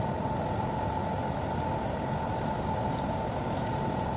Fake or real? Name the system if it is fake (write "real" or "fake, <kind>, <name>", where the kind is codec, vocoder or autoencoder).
real